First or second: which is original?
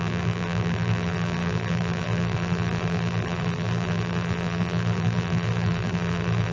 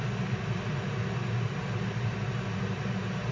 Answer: second